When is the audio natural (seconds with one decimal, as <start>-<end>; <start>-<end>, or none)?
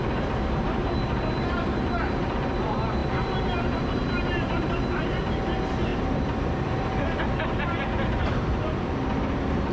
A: none